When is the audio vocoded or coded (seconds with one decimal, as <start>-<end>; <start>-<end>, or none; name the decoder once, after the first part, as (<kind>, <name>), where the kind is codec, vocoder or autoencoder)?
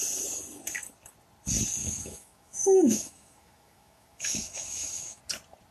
1.8-5.2 (autoencoder, DAC-VAE)